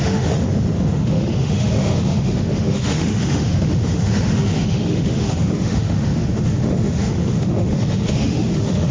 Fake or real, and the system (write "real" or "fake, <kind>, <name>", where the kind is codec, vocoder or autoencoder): fake, autoencoder, DAC-VAE